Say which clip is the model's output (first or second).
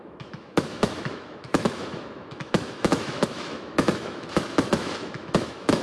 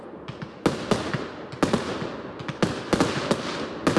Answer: first